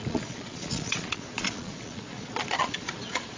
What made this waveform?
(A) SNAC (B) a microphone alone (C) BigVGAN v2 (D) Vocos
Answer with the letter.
D